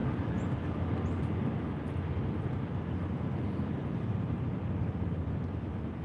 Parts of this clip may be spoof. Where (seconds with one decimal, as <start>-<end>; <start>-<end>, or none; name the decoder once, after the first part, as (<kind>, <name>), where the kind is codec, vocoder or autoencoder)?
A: none